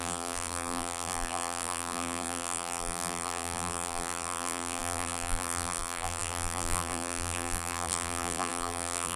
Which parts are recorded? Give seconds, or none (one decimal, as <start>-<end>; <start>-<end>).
none